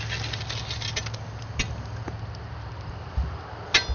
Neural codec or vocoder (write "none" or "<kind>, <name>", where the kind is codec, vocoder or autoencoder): none